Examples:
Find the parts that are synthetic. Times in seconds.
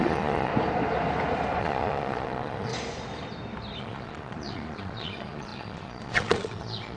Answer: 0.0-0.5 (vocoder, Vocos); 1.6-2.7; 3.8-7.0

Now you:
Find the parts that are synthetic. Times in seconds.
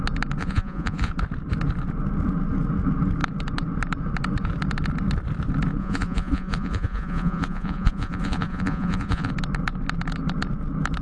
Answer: 0.4-1.1 (vocoder, Vocos); 5.8-9.3